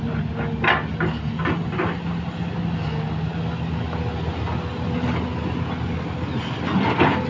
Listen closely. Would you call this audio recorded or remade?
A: recorded